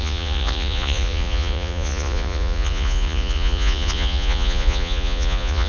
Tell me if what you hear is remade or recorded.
remade